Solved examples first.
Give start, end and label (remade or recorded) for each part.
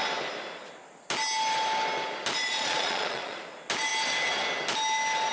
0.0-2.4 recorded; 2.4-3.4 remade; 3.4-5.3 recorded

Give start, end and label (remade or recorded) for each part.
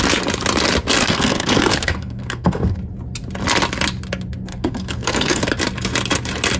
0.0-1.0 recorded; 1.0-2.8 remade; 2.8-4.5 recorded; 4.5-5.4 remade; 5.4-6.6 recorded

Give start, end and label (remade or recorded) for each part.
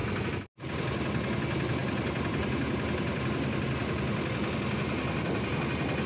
0.0-6.1 recorded